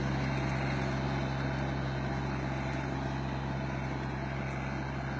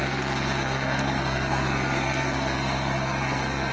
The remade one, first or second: second